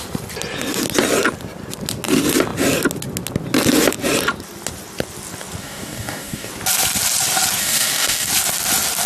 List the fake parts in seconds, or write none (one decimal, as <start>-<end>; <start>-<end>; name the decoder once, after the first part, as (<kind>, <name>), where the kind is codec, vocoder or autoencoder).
5.6-6.5 (codec, DAC); 7.6-8.3